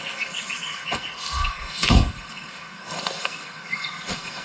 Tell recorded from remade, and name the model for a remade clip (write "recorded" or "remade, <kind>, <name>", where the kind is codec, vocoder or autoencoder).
remade, codec, SNAC